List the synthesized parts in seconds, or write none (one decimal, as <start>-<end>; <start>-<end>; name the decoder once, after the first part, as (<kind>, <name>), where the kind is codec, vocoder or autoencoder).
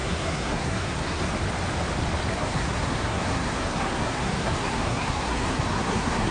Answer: 0.0-1.3 (codec, SNAC); 2.3-6.3